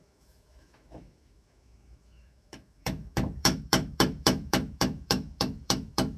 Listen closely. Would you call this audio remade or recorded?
remade